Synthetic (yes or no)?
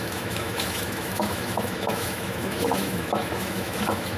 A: yes